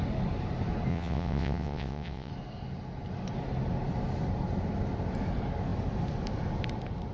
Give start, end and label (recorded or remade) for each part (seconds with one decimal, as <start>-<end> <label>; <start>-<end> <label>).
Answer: 0.0-0.9 recorded; 0.9-2.3 remade; 2.3-7.1 recorded

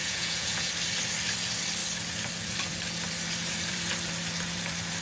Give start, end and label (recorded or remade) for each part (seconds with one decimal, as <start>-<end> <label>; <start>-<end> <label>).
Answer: 0.0-0.7 remade; 0.7-5.0 recorded

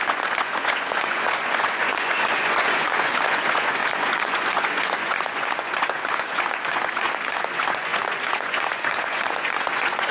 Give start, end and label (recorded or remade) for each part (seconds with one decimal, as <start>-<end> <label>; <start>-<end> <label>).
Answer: 0.0-10.1 remade

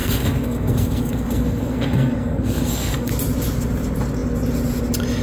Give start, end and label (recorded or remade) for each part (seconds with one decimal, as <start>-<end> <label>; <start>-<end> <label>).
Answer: 0.0-3.1 remade; 3.1-5.2 recorded

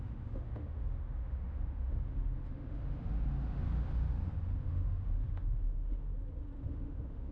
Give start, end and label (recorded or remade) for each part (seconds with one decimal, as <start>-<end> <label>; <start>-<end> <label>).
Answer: 0.0-6.1 remade; 6.1-6.6 recorded; 6.6-7.3 remade

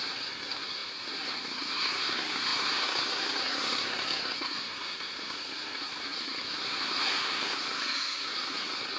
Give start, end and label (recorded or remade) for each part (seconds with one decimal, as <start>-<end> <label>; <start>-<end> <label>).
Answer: 0.0-9.0 remade

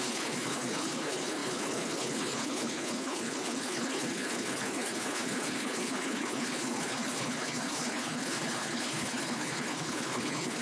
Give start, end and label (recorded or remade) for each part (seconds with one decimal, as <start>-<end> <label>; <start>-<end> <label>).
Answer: 0.0-10.6 remade

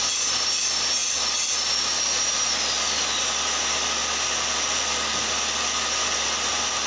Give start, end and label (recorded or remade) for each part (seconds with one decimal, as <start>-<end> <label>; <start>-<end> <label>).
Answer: 0.0-6.9 recorded